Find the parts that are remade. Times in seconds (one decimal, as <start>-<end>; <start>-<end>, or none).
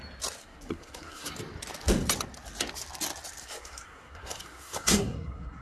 0.4-1.3; 3.4-5.6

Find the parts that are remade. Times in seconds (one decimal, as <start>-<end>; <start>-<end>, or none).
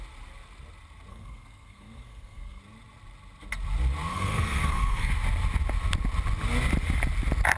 1.1-2.6; 4.1-5.1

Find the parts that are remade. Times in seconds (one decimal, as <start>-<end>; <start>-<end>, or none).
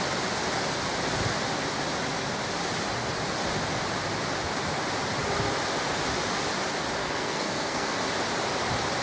7.0-8.0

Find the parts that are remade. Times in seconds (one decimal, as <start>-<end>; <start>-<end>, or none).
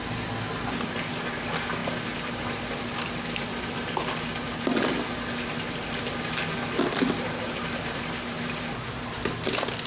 none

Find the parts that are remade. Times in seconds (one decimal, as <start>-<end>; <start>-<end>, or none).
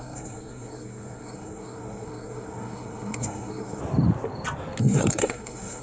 0.0-3.8; 4.8-5.8